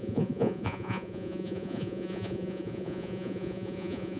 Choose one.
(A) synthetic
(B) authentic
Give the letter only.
A